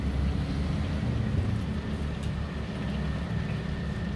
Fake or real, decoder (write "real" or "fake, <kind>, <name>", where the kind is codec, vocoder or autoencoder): real